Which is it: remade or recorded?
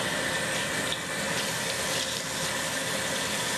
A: recorded